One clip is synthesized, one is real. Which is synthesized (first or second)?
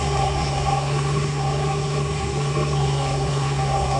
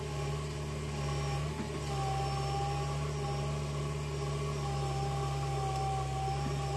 first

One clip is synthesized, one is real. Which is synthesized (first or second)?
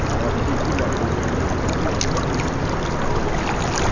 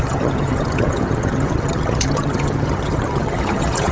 second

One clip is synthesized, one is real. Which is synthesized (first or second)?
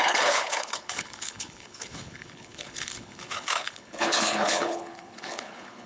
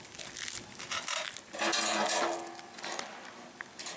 first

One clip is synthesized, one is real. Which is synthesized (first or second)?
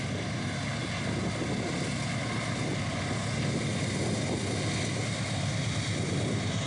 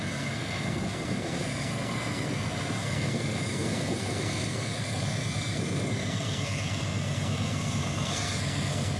second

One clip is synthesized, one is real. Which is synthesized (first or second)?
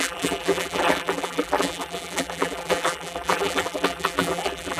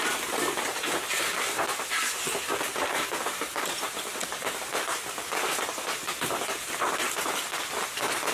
first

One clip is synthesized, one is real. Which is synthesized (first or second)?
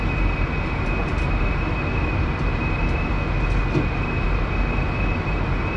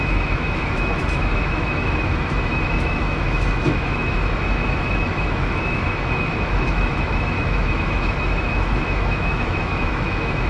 second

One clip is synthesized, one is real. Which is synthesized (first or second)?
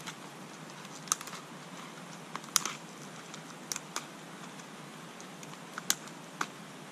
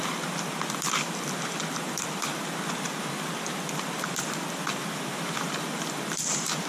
second